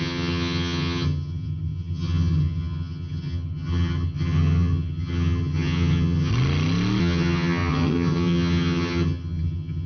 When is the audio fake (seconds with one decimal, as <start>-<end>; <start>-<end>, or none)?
0.0-6.3; 7.0-9.9